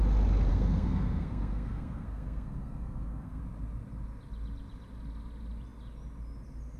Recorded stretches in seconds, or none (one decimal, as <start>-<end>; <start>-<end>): 0.0-0.5; 3.4-6.8